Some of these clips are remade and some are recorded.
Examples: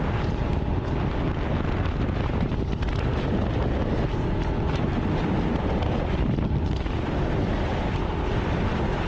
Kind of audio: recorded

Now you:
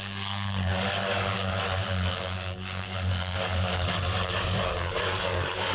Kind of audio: remade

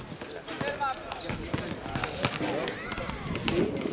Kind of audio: recorded